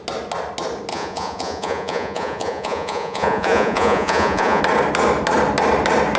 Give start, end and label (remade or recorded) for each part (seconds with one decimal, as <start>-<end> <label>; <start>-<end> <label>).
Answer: 0.0-0.9 recorded; 0.9-4.6 remade; 4.6-6.2 recorded